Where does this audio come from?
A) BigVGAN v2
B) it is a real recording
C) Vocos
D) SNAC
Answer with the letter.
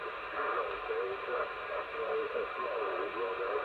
B